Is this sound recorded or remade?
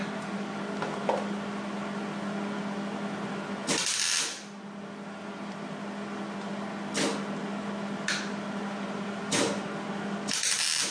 recorded